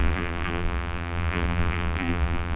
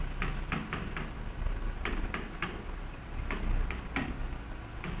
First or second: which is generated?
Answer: first